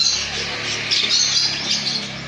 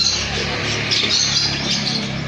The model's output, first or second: second